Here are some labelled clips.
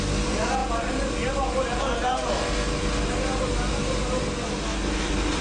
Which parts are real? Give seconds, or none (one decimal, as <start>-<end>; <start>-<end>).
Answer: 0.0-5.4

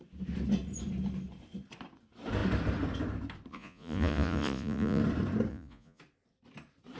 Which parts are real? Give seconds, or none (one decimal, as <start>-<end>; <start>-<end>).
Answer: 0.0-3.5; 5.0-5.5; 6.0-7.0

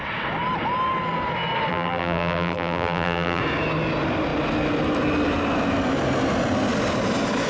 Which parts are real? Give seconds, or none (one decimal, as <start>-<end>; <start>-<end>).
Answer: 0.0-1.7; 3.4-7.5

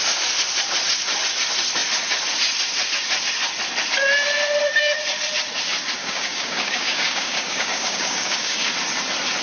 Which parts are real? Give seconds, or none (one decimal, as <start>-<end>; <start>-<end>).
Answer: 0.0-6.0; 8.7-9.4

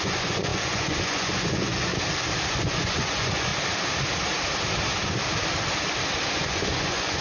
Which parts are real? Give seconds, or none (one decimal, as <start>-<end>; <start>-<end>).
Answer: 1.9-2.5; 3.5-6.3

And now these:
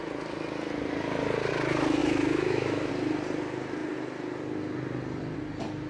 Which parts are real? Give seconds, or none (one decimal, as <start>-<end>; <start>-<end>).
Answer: 0.0-2.0; 2.9-5.9

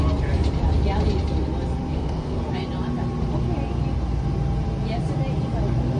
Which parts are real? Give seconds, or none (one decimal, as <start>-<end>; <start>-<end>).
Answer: 0.0-1.9; 2.4-6.0